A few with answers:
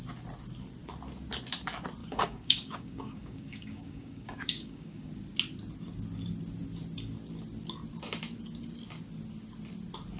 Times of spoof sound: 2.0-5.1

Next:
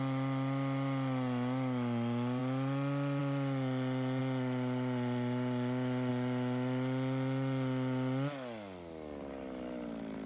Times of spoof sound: none

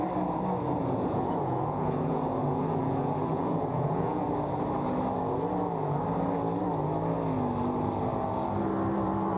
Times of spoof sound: 0.7-4.3

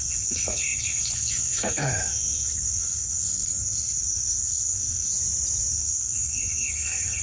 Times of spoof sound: 0.0-5.1; 5.7-7.2